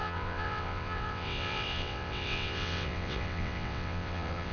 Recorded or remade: remade